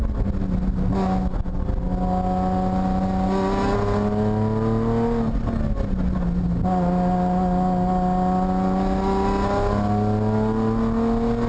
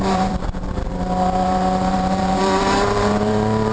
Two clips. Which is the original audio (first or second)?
first